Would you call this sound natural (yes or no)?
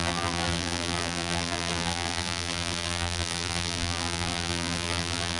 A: no